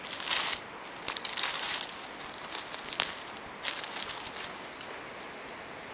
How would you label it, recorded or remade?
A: recorded